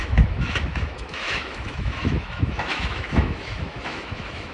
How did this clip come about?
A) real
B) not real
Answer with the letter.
B